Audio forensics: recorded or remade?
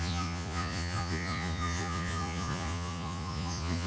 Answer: remade